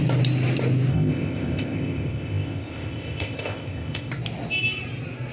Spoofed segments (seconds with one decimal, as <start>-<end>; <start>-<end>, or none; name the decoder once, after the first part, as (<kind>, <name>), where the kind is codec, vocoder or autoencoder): 0.9-4.1 (codec, ZipCodec)